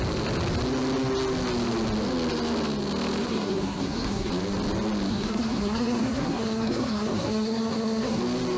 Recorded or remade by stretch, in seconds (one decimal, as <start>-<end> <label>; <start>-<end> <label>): 0.0-3.2 recorded; 3.2-4.3 remade; 4.3-5.1 recorded; 5.1-8.2 remade; 8.2-8.6 recorded